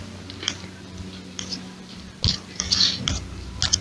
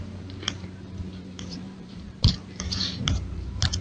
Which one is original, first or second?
first